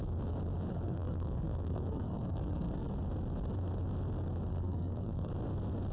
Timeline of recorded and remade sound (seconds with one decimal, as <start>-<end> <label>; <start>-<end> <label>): 0.0-0.7 recorded; 0.7-2.9 remade; 2.9-4.5 recorded; 4.5-5.3 remade; 5.3-5.9 recorded